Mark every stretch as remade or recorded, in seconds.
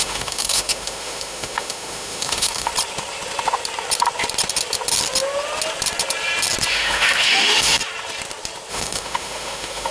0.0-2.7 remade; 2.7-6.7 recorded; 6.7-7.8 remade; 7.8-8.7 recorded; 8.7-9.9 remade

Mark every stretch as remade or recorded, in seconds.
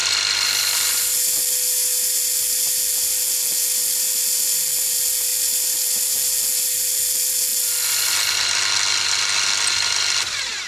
0.0-10.7 recorded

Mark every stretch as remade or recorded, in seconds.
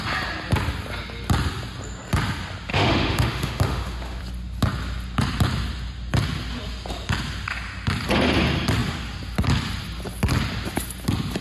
0.0-2.7 recorded; 2.7-4.2 remade; 4.2-11.4 recorded